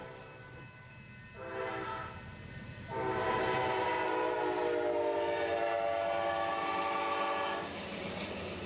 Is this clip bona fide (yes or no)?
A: yes